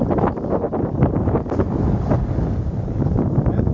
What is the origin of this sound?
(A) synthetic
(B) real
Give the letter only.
B